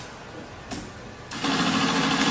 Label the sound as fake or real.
real